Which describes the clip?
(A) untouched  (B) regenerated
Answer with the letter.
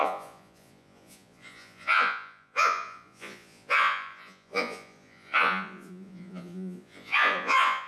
B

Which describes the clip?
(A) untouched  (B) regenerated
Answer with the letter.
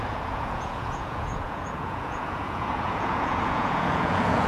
B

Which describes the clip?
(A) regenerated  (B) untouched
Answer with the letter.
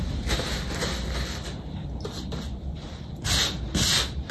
B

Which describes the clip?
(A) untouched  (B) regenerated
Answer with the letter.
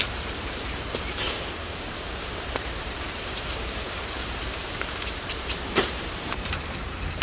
B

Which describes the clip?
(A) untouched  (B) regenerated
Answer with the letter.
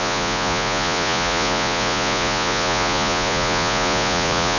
B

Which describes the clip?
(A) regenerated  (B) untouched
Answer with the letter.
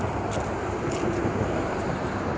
B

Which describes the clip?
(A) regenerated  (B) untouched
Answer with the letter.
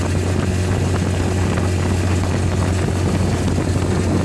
B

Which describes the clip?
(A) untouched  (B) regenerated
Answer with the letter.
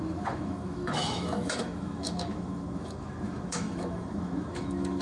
B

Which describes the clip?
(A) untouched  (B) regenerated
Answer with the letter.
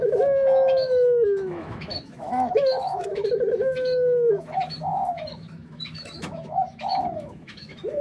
B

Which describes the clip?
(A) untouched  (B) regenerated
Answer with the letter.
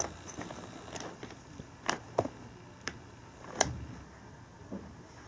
A